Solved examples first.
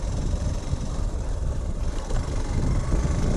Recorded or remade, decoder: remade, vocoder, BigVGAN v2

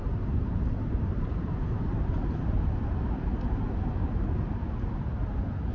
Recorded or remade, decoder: remade, vocoder, BigVGAN v2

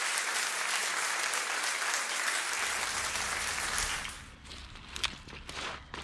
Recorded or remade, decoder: recorded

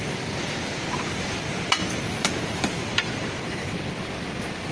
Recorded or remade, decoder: remade, vocoder, BigVGAN v2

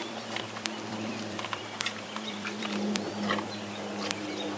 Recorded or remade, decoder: remade, vocoder, BigVGAN v2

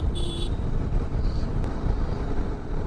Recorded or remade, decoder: remade, vocoder, BigVGAN v2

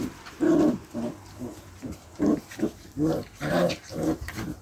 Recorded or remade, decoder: remade, vocoder, BigVGAN v2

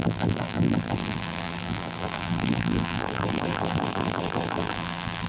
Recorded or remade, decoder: remade, vocoder, BigVGAN v2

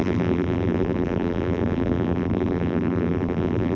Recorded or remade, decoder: remade, vocoder, BigVGAN v2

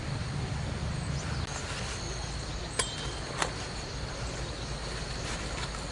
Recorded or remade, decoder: recorded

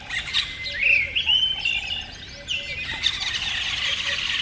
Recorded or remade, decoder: recorded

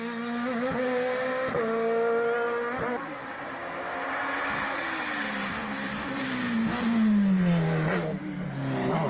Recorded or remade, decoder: recorded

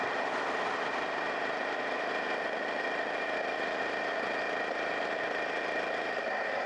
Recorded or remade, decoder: recorded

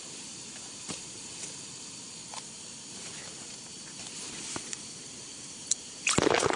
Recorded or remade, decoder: remade, vocoder, BigVGAN v2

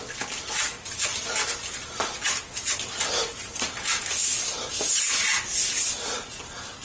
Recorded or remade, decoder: recorded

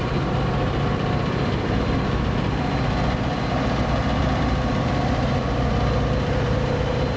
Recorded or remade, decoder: remade, vocoder, BigVGAN v2